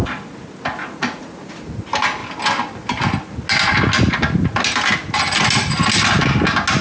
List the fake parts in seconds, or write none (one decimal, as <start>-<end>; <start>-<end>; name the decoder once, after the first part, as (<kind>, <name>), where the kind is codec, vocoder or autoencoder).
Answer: 0.8-1.7 (vocoder, Vocos)